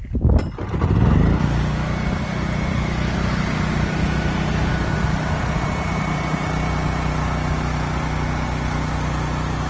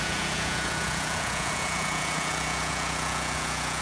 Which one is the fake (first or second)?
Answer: second